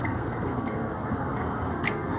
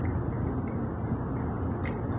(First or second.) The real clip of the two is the second